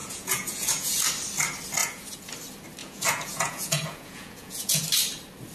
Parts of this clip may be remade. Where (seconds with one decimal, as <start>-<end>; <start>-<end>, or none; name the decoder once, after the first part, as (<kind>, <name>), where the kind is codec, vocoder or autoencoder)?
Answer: 0.0-0.9 (vocoder, Vocos); 1.8-2.3; 2.8-4.8